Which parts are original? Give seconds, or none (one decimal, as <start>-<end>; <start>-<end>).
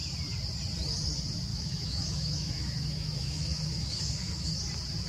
0.0-1.5; 4.6-5.1